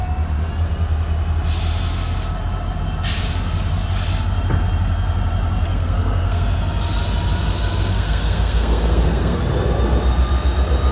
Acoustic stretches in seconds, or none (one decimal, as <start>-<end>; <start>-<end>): 0.0-5.7; 6.6-7.9; 9.4-10.9